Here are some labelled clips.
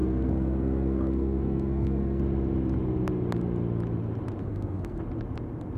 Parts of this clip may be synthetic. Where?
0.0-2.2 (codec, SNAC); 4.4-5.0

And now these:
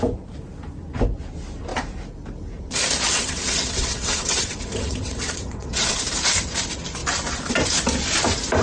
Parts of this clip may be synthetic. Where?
3.1-6.0 (vocoder, WaveNeXt)

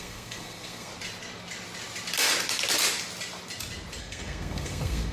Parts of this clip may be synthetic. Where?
0.0-0.9 (codec, SNAC); 4.0-5.1

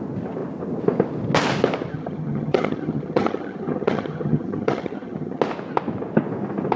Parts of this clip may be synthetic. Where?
1.9-5.4 (vocoder, HiFi-GAN)

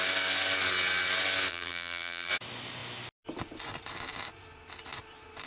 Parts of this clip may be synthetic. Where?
1.5-2.3 (vocoder, BigVGAN v2)

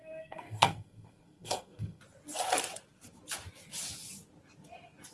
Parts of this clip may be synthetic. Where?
0.0-2.0 (codec, SNAC)

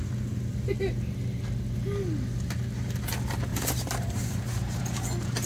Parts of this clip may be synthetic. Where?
3.5-4.8 (vocoder, BigVGAN v2)